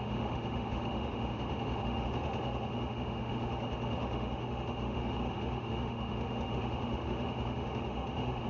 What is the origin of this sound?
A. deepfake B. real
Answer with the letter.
A